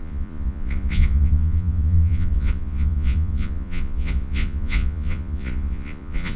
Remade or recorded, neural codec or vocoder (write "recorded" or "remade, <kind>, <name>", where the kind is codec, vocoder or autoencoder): remade, vocoder, Vocos